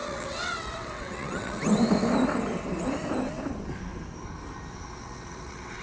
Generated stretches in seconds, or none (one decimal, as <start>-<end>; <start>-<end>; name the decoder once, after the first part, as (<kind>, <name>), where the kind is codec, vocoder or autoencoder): 0.0-1.6 (vocoder, WaveNeXt); 5.0-5.8